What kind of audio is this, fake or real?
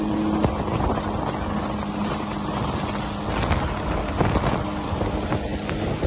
real